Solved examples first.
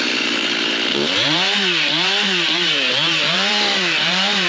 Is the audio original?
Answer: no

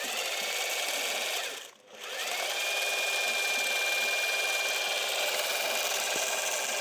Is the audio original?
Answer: yes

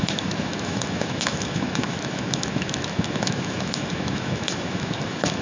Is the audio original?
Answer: no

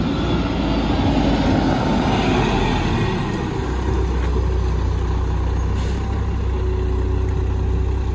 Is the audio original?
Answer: yes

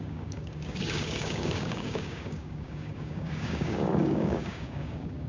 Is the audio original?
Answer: no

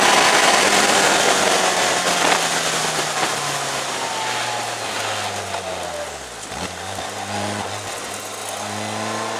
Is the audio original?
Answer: yes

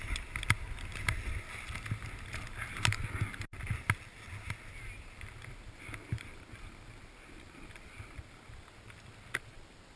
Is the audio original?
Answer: yes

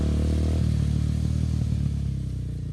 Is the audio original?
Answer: yes